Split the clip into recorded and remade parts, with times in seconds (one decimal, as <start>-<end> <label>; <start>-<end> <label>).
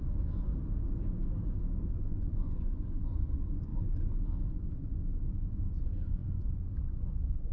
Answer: 0.0-0.5 remade; 0.5-1.9 recorded; 1.9-3.7 remade; 3.7-4.5 recorded; 4.5-5.0 remade; 5.0-5.5 recorded; 5.5-7.5 remade